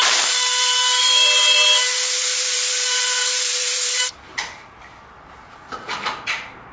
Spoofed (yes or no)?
yes